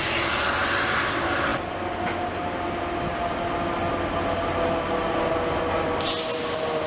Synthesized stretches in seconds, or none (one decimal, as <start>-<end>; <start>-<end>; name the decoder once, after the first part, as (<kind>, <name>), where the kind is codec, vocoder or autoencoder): none

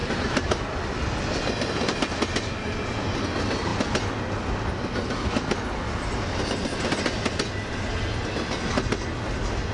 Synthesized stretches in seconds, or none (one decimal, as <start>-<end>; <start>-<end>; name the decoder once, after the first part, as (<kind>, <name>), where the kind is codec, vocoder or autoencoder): 0.0-0.6 (vocoder, BigVGAN v2)

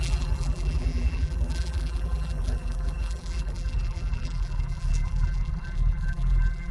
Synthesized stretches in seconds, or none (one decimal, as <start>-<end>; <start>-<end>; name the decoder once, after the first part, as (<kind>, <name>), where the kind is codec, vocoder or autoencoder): 0.0-6.7 (vocoder, BigVGAN v2)

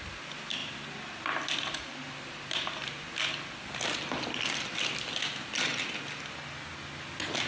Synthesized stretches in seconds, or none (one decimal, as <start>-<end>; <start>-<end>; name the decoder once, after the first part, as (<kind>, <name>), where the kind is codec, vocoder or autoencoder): none